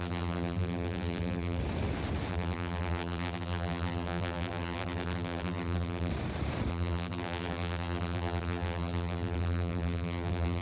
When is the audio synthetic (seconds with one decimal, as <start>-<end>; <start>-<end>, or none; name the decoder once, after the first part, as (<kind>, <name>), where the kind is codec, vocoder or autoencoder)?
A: 0.0-1.6 (vocoder, BigVGAN v2); 2.3-6.1; 6.7-10.6